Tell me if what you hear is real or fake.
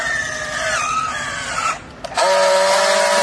real